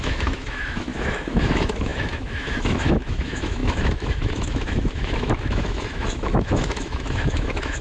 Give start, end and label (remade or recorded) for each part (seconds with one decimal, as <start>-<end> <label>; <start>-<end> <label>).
0.0-7.8 remade